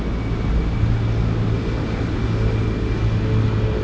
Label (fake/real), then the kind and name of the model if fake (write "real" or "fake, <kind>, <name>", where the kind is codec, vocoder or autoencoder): real